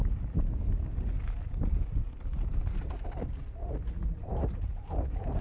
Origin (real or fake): real